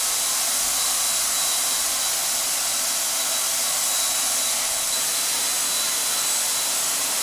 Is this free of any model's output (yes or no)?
yes